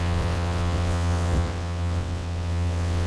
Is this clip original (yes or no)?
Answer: no